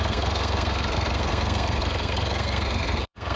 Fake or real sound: fake